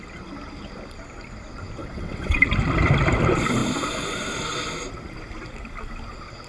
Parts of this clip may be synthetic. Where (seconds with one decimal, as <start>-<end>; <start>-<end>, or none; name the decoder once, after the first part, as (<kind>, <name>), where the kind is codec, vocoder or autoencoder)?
1.8-2.4 (vocoder, WaveNeXt)